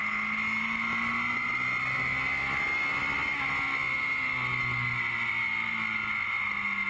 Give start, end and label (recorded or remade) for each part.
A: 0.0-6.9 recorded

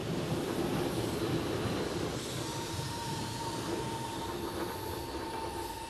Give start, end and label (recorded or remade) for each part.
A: 0.0-2.5 recorded; 2.5-3.7 remade; 3.7-5.9 recorded